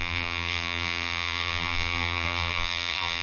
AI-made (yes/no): yes